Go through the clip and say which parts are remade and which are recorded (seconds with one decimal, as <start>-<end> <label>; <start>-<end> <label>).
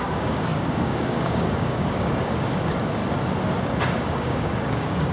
0.0-3.0 remade; 3.0-4.0 recorded; 4.0-5.1 remade